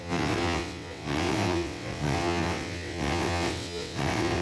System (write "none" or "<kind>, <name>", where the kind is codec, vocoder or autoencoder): vocoder, WaveNeXt